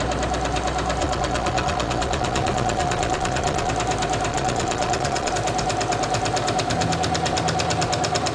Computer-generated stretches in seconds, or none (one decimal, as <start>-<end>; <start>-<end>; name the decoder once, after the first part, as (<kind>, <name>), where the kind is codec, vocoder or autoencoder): 1.0-3.7 (vocoder, Vocos); 4.3-5.3